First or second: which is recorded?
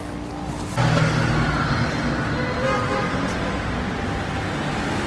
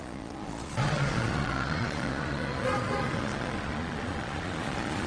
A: first